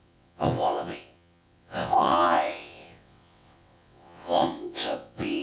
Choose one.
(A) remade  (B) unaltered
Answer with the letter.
A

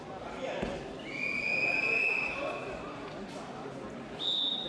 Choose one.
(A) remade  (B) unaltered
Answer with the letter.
B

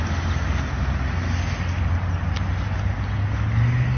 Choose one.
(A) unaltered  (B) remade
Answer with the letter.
A